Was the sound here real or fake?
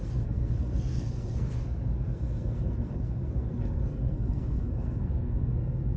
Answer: fake